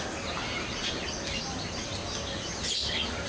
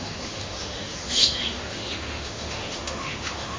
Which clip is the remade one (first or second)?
second